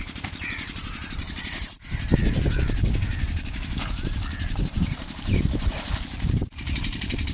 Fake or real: fake